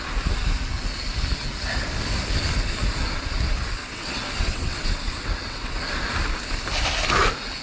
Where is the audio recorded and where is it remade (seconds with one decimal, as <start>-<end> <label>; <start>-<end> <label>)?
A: 0.0-3.7 recorded; 3.7-5.7 remade; 5.7-7.6 recorded